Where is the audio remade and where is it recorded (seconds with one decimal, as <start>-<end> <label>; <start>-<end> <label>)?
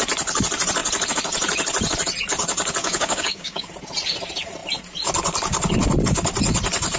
0.0-2.8 recorded; 2.8-3.7 remade; 3.7-7.0 recorded